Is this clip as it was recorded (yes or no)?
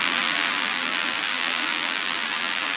no